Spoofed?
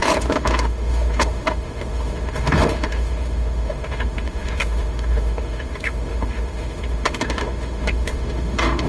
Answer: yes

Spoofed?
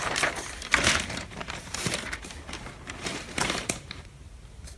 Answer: yes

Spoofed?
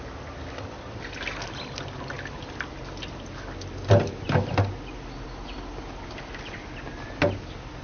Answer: no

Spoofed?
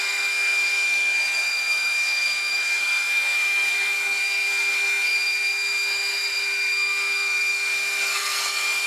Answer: yes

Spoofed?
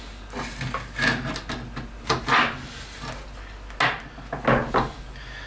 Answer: no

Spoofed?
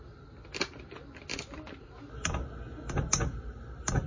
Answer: no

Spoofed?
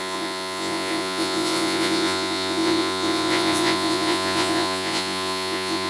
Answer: yes